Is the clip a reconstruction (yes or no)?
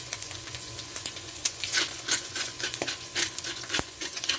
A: yes